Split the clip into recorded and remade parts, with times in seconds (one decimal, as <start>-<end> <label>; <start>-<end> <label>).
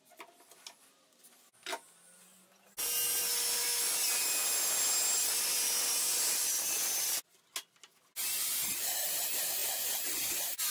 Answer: 0.0-10.7 recorded